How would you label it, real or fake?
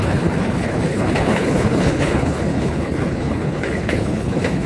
fake